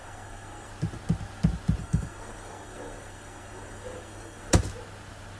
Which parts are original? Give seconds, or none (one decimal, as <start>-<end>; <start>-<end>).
0.7-1.8; 4.5-5.4